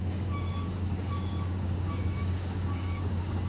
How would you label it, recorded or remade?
remade